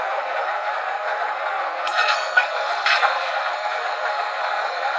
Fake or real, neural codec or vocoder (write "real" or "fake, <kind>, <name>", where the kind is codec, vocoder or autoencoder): fake, codec, SNAC